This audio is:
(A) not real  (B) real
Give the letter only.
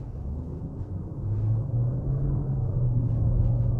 A